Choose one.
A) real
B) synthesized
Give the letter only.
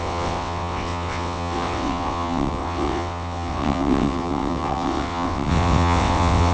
B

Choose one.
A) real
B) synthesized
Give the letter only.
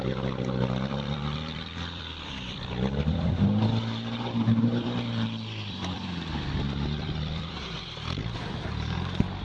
B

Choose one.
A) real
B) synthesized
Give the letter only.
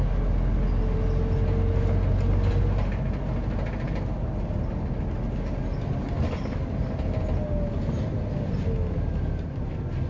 A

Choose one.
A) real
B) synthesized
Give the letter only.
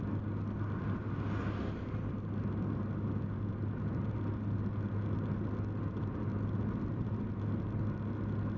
A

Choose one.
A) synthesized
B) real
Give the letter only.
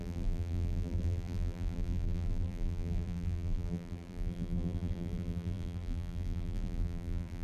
A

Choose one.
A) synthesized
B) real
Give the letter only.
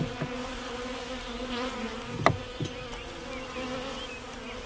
B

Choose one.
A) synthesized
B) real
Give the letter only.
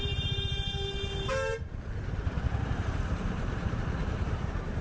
A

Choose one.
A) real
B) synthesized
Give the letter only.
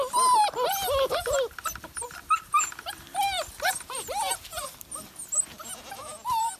A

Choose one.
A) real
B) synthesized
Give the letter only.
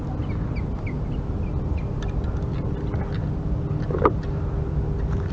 A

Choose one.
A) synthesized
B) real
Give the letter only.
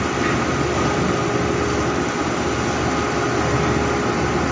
B